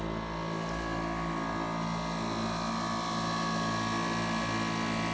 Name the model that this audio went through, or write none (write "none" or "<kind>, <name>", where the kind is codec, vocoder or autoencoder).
none